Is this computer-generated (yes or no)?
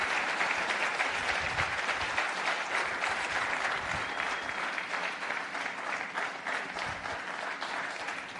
no